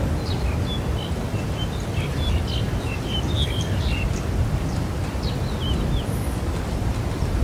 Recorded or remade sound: recorded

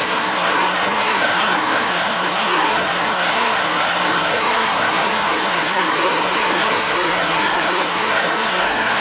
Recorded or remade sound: remade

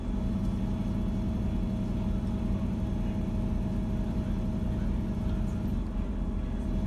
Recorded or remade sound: recorded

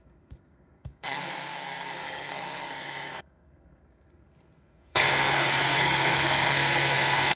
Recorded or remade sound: remade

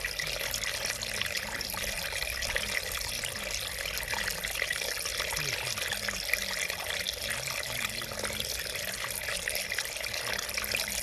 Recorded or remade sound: recorded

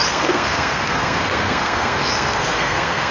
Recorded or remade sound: remade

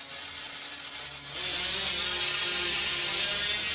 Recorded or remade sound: recorded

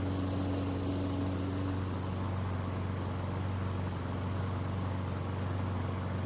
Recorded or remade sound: recorded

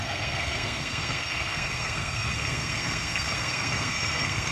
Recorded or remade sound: remade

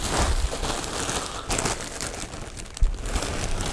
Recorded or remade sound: recorded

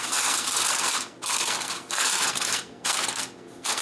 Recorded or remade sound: remade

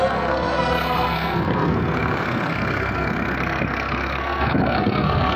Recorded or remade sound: remade